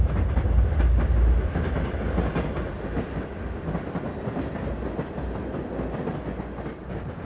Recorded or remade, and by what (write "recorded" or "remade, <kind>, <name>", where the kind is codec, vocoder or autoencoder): recorded